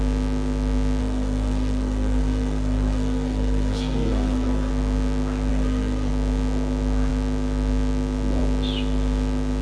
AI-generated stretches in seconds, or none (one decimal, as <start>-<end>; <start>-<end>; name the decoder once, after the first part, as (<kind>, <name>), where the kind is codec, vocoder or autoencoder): 1.0-4.7 (codec, SNAC); 5.5-6.1